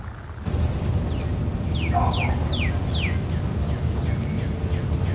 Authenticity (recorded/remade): recorded